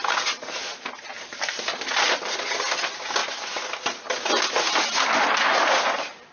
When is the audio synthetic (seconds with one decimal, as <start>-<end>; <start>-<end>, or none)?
none

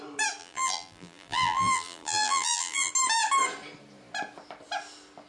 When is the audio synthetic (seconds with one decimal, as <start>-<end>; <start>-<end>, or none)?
0.4-2.9

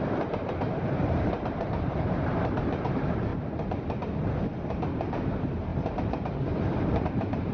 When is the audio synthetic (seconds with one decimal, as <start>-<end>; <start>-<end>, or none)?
0.0-3.3; 4.7-7.5

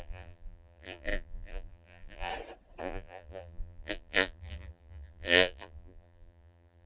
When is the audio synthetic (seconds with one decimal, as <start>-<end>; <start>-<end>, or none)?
0.0-2.3; 2.8-6.9

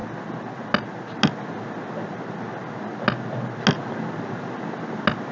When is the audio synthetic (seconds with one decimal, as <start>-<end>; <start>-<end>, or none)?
none

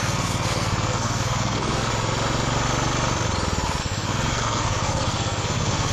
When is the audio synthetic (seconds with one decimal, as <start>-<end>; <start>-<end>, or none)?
0.0-1.9; 3.8-5.9

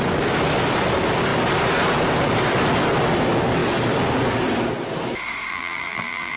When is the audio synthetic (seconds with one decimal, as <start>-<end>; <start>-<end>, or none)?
5.5-6.4